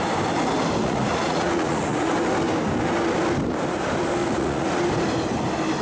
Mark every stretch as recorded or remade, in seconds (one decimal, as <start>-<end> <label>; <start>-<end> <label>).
0.0-0.8 recorded; 0.8-2.1 remade; 2.1-4.2 recorded; 4.2-4.8 remade; 4.8-5.8 recorded

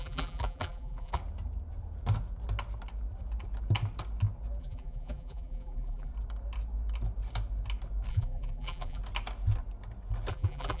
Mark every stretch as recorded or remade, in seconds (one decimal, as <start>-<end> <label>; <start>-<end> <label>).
0.0-1.2 remade; 1.2-4.6 recorded; 4.6-6.1 remade; 6.1-8.1 recorded; 8.1-9.0 remade; 9.0-10.3 recorded; 10.3-10.8 remade

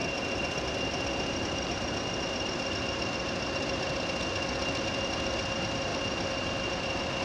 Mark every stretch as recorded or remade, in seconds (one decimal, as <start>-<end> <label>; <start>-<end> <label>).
0.0-7.2 recorded

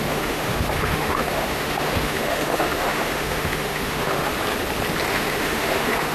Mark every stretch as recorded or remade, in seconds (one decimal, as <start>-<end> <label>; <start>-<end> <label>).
0.0-4.3 remade; 4.3-5.1 recorded; 5.1-6.1 remade